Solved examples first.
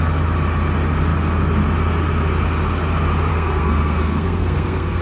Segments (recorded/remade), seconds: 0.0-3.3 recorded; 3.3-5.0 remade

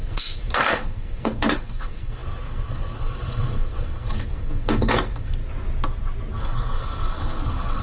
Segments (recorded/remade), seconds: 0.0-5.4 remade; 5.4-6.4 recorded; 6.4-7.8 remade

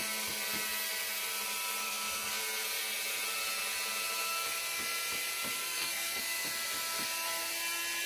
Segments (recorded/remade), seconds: 0.0-1.8 recorded; 1.8-2.4 remade; 2.4-5.6 recorded; 5.6-6.2 remade; 6.2-8.1 recorded